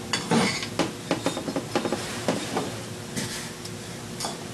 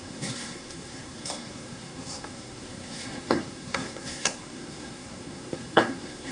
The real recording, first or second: first